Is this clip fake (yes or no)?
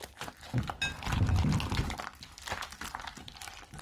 no